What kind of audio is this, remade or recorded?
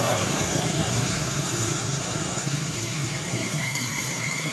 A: remade